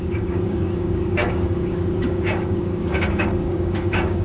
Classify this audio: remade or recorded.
remade